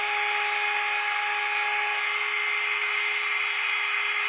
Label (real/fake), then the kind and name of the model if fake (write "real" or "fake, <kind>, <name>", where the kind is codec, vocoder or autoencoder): real